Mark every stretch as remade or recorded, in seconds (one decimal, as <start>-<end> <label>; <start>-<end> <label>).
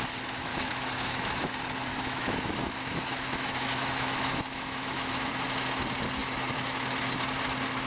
0.0-0.5 recorded; 0.5-1.5 remade; 1.5-1.9 recorded; 1.9-5.3 remade; 5.3-7.9 recorded